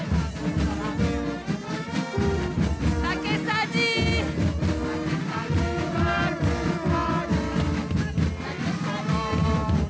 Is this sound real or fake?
real